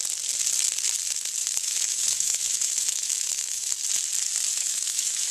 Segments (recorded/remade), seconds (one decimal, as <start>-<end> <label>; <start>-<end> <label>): 0.0-1.4 recorded; 1.4-3.7 remade; 3.7-4.5 recorded; 4.5-5.3 remade